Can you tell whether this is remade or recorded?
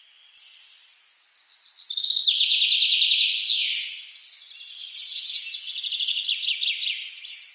recorded